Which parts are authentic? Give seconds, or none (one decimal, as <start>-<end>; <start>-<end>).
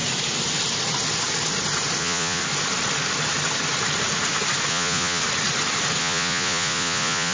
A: 0.0-2.0; 2.4-4.7; 5.2-6.0